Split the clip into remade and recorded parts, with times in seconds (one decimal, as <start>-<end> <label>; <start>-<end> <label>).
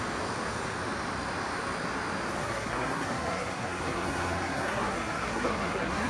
0.0-2.4 recorded; 2.4-6.1 remade